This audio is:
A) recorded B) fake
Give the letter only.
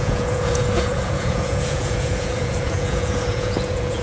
B